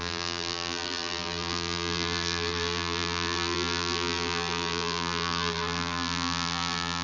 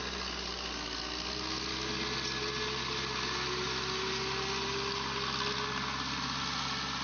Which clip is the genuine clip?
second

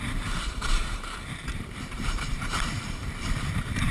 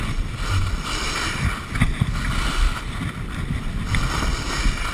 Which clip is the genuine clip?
second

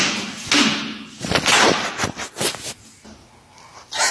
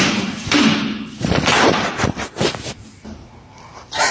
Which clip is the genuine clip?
first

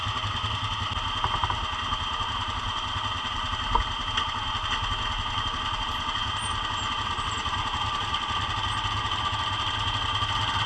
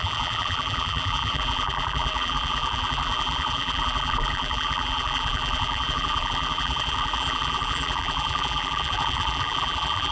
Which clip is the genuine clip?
first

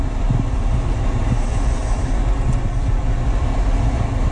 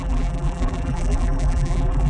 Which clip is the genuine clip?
first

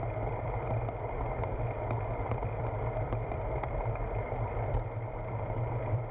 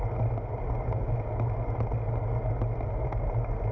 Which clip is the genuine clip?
second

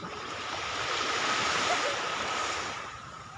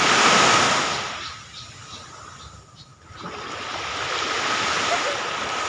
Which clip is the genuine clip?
second